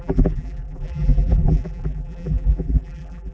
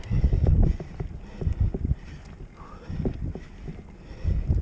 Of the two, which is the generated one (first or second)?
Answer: first